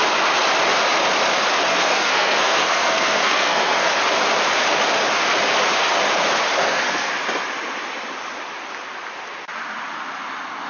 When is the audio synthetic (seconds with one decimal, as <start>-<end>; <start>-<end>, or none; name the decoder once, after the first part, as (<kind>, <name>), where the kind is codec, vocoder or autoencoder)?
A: 1.7-3.9 (codec, SNAC); 6.6-7.1